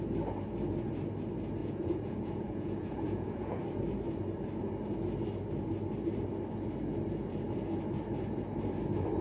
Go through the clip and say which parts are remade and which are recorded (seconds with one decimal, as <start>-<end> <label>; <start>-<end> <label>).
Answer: 0.0-1.6 recorded; 1.6-3.6 remade; 3.6-9.2 recorded